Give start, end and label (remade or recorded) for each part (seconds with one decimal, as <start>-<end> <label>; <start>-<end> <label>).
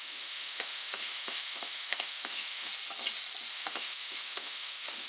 0.0-2.7 remade; 2.7-3.5 recorded; 3.5-5.1 remade